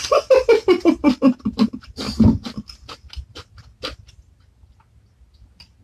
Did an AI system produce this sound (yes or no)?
no